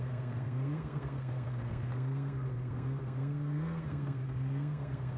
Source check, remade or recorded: remade